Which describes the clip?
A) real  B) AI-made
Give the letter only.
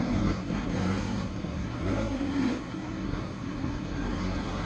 B